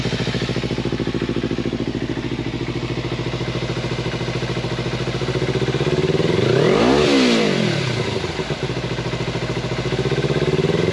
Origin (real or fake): real